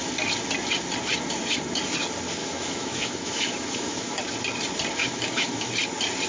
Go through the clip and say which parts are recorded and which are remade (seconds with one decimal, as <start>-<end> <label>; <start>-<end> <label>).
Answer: 0.0-2.4 recorded; 2.4-4.2 remade; 4.2-5.0 recorded; 5.0-5.7 remade; 5.7-6.3 recorded